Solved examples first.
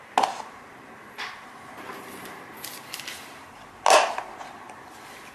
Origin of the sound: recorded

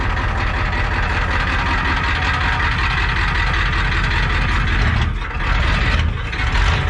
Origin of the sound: recorded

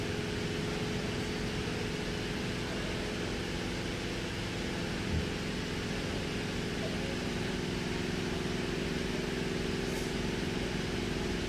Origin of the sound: recorded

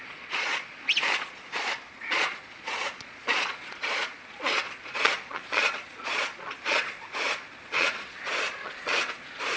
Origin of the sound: remade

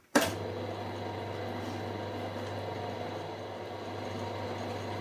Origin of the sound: remade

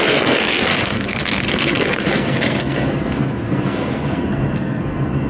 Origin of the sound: remade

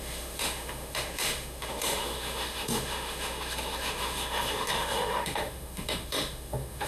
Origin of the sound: remade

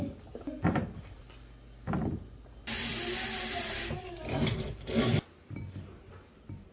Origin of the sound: recorded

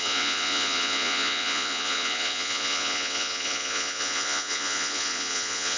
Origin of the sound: remade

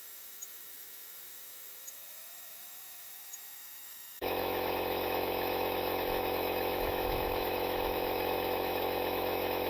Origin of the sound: remade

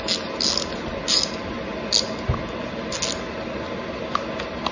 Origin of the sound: recorded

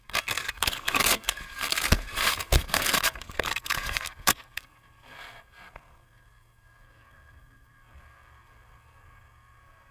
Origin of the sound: remade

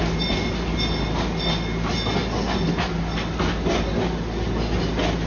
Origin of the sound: recorded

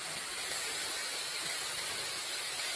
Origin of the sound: remade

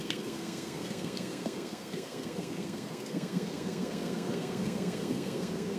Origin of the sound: remade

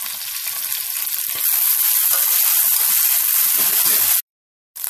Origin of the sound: recorded